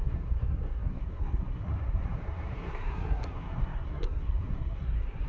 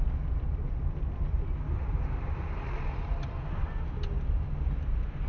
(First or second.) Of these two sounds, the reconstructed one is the first